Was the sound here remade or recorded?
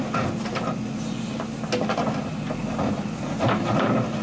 recorded